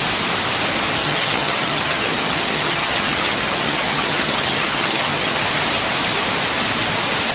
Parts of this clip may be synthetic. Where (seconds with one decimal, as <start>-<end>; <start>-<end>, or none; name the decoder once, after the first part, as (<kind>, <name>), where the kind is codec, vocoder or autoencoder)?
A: 1.0-5.4 (vocoder, HiFi-GAN)